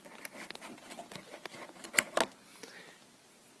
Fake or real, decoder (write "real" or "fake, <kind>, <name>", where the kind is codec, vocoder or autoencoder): real